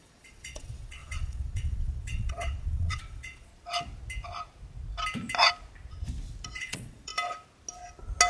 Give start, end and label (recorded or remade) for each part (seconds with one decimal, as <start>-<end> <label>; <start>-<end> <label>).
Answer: 0.0-3.5 remade; 3.5-6.5 recorded; 6.5-7.1 remade; 7.1-8.3 recorded